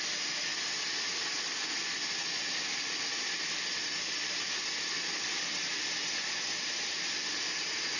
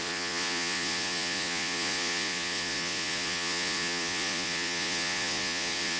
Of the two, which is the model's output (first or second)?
second